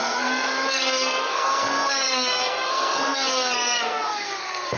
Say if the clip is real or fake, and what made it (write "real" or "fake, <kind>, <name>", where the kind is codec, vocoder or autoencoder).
fake, codec, SNAC